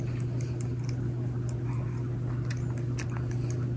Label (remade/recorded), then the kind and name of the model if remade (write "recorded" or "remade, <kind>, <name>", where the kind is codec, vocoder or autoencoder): recorded